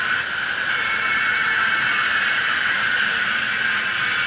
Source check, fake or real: real